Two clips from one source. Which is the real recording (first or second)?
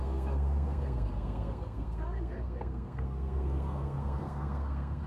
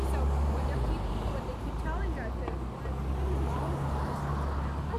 second